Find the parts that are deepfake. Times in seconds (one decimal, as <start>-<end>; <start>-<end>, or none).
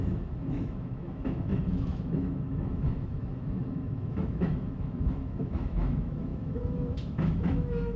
0.0-8.0